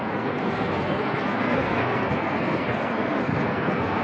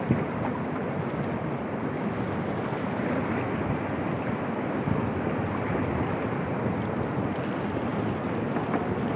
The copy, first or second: first